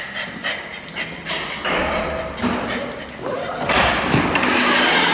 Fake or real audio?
real